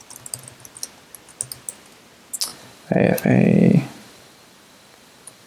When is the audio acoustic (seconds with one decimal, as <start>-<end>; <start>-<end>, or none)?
0.0-2.5